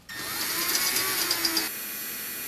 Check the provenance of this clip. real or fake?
real